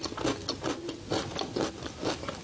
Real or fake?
real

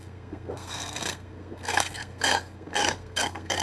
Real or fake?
fake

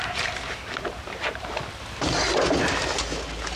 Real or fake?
real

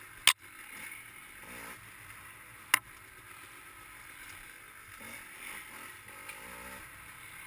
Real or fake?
real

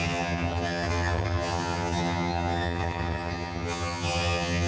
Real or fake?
fake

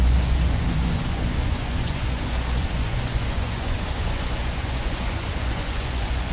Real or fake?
fake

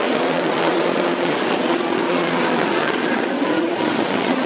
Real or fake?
fake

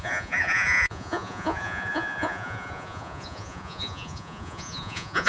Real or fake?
fake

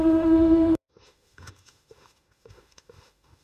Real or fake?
fake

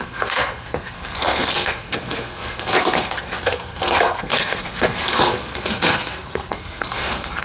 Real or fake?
fake